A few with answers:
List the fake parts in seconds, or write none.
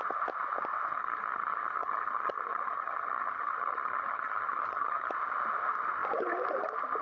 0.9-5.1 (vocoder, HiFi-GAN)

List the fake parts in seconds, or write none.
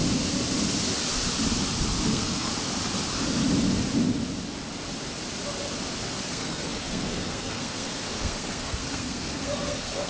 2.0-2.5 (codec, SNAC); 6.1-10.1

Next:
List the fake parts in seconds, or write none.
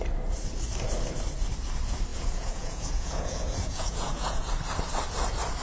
2.1-4.5 (vocoder, Vocos)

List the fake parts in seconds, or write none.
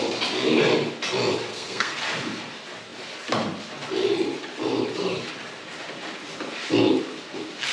1.5-2.0 (codec, SNAC)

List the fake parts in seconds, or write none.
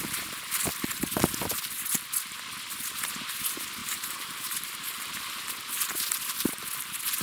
3.8-5.1 (vocoder, BigVGAN v2)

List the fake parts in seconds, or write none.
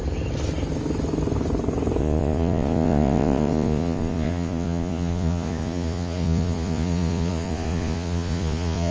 2.0-8.9 (vocoder, Vocos)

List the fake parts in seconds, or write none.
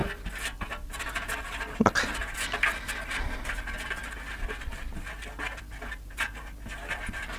none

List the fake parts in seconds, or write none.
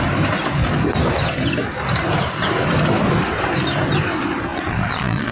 4.5-5.3 (vocoder, Vocos)